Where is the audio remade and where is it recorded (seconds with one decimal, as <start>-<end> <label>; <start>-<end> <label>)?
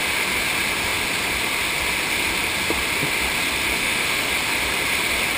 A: 0.0-3.8 recorded; 3.8-4.3 remade; 4.3-5.4 recorded